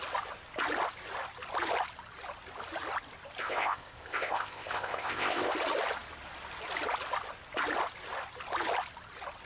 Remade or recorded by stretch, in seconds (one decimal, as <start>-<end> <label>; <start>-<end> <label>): 0.0-3.4 recorded; 3.4-5.5 remade; 5.5-9.5 recorded